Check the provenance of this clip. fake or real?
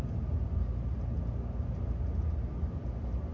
real